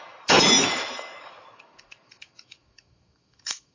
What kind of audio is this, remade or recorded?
remade